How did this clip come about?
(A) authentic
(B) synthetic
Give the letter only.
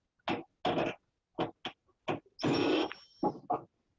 A